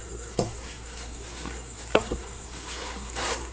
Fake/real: fake